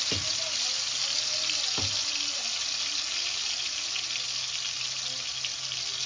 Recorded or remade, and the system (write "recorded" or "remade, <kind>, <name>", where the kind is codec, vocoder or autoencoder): recorded